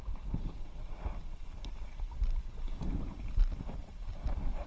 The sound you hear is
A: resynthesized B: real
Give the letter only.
B